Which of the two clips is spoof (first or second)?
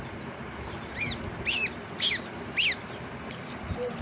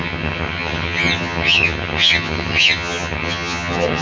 second